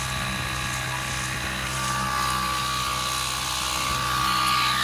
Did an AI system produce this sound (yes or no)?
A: no